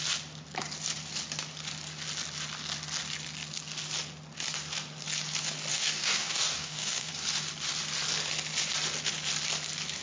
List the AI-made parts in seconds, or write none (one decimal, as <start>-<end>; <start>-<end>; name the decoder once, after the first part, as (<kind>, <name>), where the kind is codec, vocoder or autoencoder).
5.7-7.1 (codec, DAC)